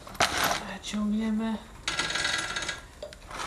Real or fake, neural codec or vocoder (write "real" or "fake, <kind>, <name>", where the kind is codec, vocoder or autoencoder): real